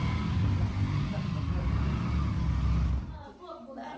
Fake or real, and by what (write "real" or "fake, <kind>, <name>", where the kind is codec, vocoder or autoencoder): real